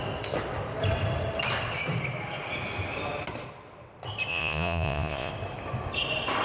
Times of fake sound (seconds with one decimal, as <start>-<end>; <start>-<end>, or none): 4.3-5.3